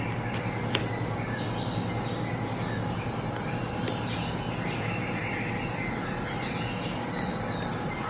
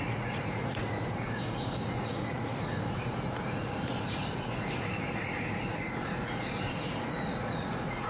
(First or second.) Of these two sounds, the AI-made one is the second